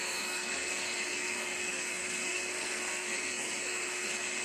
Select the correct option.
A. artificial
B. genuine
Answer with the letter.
A